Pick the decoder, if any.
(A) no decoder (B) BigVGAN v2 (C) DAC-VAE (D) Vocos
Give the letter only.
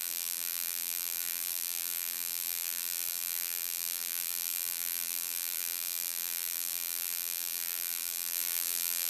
B